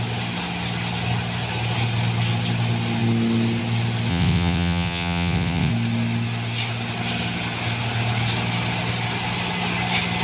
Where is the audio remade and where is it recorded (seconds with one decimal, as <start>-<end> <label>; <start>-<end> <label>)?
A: 0.0-4.1 recorded; 4.1-5.7 remade; 5.7-10.2 recorded